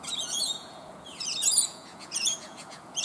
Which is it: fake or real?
fake